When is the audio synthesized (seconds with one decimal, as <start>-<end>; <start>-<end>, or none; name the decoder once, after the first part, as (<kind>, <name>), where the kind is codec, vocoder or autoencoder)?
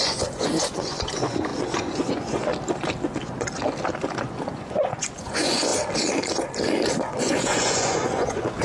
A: 0.0-2.5 (vocoder, Vocos); 4.2-5.7; 7.2-8.6